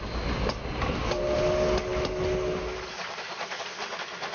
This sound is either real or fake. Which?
real